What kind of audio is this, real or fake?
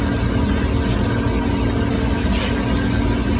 real